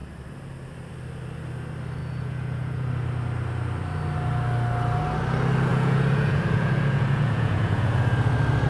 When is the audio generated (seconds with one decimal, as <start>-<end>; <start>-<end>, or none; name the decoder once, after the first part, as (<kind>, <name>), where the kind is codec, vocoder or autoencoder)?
2.0-2.9 (vocoder, Vocos); 5.7-8.0